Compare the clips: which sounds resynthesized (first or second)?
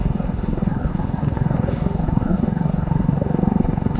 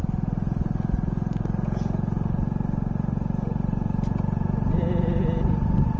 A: first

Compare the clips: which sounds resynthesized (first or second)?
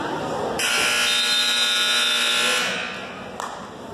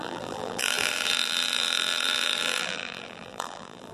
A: second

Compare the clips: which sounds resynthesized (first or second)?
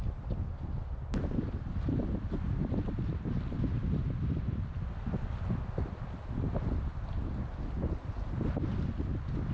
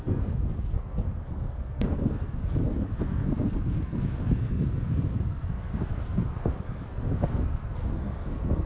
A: second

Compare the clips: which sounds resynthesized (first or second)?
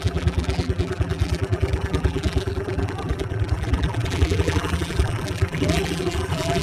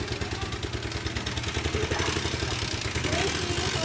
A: first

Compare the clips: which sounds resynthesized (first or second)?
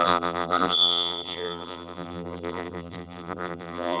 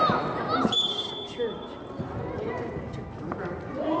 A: first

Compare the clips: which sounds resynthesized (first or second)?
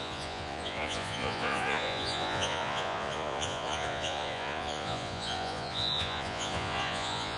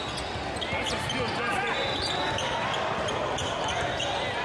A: first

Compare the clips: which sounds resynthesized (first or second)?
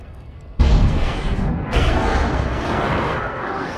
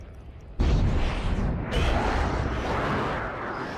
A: first